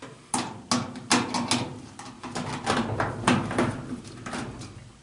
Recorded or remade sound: recorded